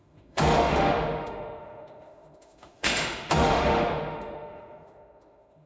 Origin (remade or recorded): remade